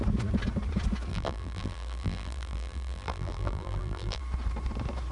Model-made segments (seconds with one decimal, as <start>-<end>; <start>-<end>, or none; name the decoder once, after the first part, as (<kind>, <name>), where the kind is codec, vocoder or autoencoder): 1.1-4.2 (vocoder, BigVGAN v2)